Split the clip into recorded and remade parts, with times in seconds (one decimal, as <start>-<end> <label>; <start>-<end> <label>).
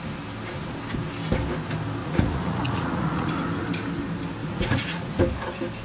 0.0-2.0 recorded; 2.0-3.3 remade; 3.3-4.4 recorded; 4.4-5.2 remade; 5.2-5.8 recorded